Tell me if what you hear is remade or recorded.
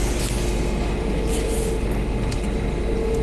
recorded